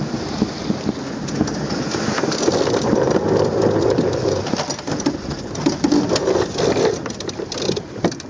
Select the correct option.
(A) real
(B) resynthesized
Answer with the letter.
A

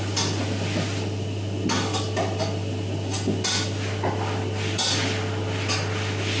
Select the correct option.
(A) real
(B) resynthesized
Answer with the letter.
A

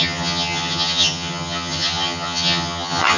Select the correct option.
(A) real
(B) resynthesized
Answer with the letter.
B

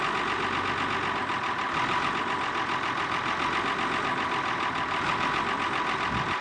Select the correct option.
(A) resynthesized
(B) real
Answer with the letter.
B